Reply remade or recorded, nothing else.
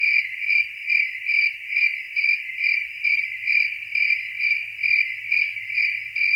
remade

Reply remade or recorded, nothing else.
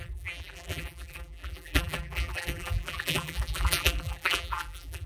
remade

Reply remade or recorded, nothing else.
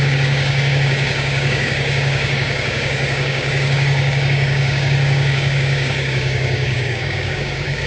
remade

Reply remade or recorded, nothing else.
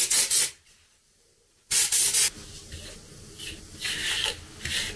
recorded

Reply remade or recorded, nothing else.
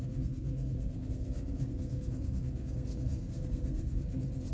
remade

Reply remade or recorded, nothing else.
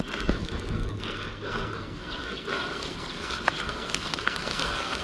remade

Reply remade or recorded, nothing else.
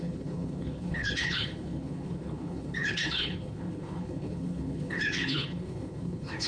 remade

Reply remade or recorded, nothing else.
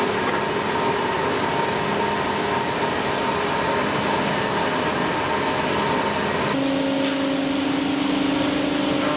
recorded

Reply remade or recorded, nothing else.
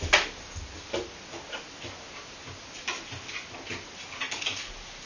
recorded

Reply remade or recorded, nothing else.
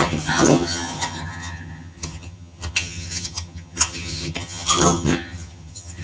remade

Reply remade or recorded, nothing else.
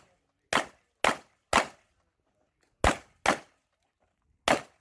recorded